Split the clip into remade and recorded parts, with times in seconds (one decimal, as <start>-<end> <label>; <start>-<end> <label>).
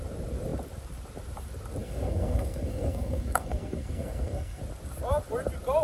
0.0-1.8 recorded; 1.8-4.6 remade; 4.6-5.8 recorded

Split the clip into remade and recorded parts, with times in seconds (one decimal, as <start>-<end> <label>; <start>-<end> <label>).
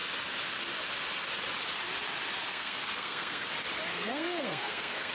0.0-2.5 recorded; 2.5-3.5 remade; 3.5-3.9 recorded; 3.9-5.1 remade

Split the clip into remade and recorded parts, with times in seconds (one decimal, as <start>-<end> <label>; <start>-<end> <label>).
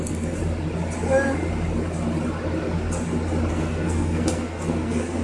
0.0-0.4 remade; 0.4-3.5 recorded; 3.5-5.2 remade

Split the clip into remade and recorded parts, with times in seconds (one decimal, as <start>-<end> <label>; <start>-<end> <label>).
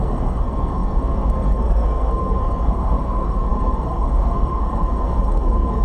0.0-5.8 remade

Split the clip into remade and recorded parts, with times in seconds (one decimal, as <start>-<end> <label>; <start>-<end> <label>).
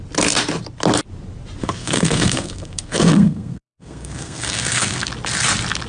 0.0-1.6 recorded; 1.6-5.1 remade; 5.1-5.9 recorded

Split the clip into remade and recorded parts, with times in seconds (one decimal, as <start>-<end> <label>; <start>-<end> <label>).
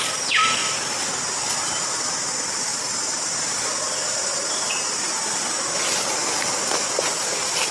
0.0-7.7 recorded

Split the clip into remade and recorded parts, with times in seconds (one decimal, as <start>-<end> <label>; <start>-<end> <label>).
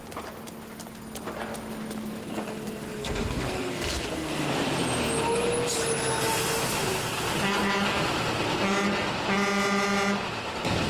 0.0-2.2 recorded; 2.2-4.5 remade; 4.5-10.9 recorded